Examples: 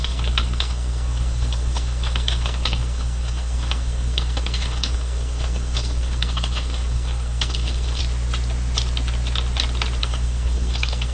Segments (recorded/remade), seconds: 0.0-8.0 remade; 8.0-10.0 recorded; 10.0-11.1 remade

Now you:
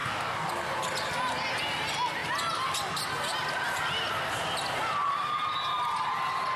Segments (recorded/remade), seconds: 0.0-0.5 remade; 0.5-6.6 recorded

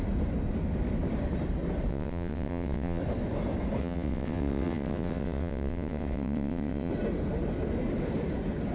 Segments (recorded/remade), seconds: 0.0-1.9 recorded; 1.9-3.0 remade; 3.0-3.8 recorded; 3.8-6.9 remade; 6.9-8.7 recorded

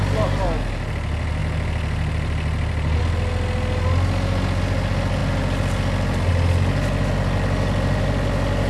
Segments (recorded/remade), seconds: 0.0-8.7 recorded

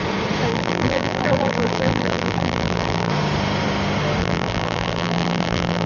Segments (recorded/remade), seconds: 0.0-0.5 recorded; 0.5-3.1 remade; 3.1-4.2 recorded; 4.2-5.9 remade

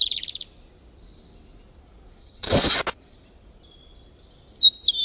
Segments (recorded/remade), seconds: 0.0-2.2 recorded; 2.2-2.8 remade; 2.8-5.0 recorded